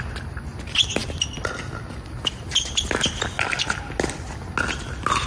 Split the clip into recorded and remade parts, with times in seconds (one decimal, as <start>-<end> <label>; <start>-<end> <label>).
0.0-1.0 recorded; 1.0-1.6 remade; 1.6-5.3 recorded